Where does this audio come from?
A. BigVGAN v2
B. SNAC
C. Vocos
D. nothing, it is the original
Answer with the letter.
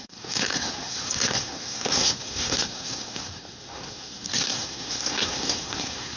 B